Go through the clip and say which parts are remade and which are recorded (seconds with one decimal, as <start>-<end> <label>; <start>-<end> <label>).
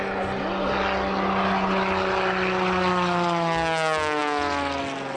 0.0-5.2 recorded